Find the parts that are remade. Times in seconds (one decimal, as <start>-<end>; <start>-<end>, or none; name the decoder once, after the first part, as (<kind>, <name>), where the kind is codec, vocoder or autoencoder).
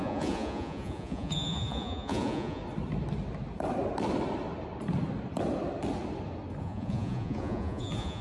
0.0-2.6 (vocoder, Vocos); 6.6-8.2